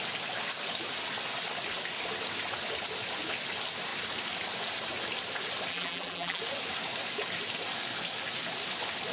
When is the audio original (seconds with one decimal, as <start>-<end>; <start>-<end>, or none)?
0.0-5.7; 6.4-9.1